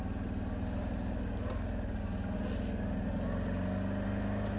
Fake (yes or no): no